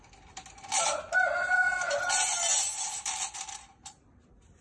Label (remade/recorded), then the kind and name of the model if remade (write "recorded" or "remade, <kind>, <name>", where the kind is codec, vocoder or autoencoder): recorded